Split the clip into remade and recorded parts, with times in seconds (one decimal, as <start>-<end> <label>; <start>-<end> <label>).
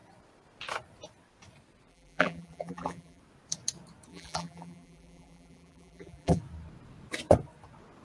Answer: 0.0-1.9 recorded; 1.9-3.2 remade; 3.2-4.1 recorded; 4.1-6.4 remade; 6.4-8.0 recorded